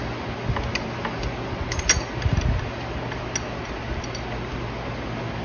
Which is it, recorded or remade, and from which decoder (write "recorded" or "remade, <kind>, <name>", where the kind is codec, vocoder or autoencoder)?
recorded